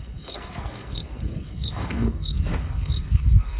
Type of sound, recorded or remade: remade